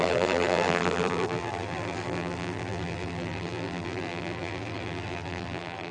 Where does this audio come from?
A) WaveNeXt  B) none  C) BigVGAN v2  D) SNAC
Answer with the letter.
C